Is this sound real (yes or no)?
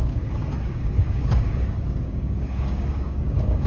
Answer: no